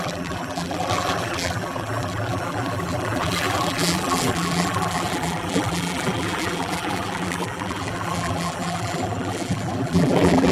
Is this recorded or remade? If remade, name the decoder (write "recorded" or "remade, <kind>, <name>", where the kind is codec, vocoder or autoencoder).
remade, vocoder, BigVGAN v2